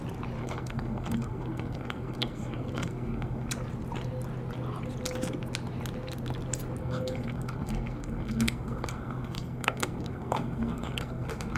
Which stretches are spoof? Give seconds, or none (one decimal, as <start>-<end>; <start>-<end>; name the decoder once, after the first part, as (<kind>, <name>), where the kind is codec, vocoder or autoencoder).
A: 0.4-3.5 (codec, SNAC); 6.8-11.6